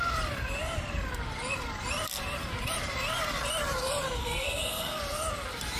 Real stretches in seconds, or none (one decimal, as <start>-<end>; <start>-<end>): 0.0-4.2; 5.0-5.8